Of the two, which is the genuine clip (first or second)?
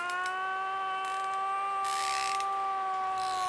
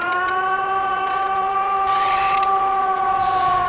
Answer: first